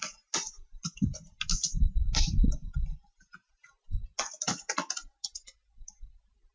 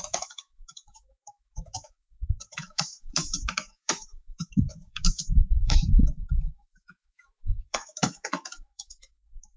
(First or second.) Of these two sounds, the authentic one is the first